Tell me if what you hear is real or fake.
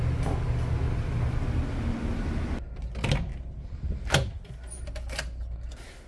real